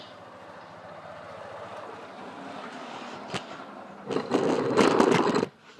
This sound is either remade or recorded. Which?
remade